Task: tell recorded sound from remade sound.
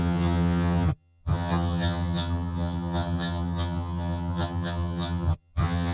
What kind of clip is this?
remade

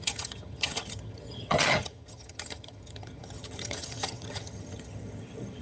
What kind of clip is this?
remade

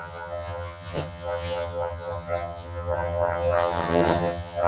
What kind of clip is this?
remade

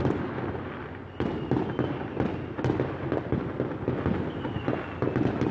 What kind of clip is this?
recorded